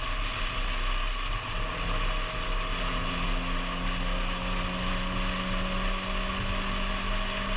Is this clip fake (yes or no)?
no